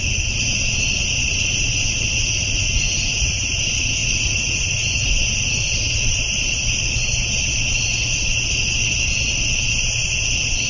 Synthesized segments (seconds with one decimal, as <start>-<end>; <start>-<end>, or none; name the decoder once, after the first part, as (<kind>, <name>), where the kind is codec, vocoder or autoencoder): 2.2-3.6 (vocoder, Vocos); 4.0-5.1